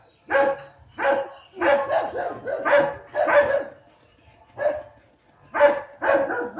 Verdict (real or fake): real